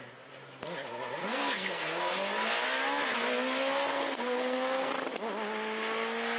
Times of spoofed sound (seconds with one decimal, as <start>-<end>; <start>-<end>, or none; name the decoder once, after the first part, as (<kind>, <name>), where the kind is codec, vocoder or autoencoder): 1.2-2.0 (codec, SNAC); 3.9-4.9

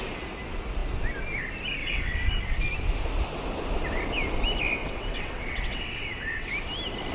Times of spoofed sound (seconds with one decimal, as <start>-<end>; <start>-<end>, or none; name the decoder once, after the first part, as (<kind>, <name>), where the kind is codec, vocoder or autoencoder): 1.8-2.4 (vocoder, WaveNeXt); 4.8-6.5